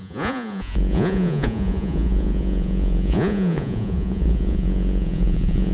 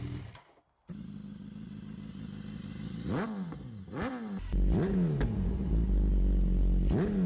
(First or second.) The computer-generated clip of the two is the first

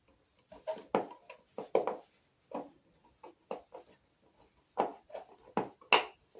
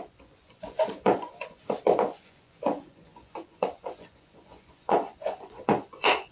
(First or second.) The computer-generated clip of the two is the second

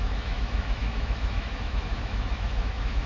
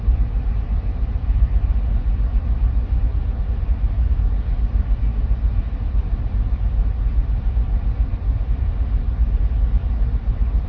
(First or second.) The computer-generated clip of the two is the first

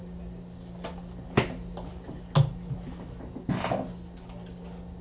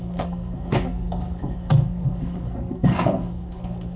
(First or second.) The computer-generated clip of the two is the second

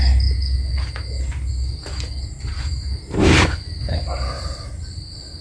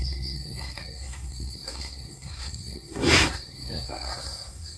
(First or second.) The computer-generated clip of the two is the second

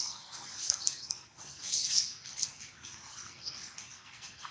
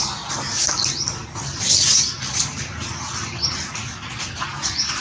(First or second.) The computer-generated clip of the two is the first